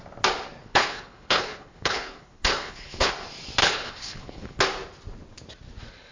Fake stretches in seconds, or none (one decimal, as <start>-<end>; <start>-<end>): 0.6-3.1; 3.6-4.6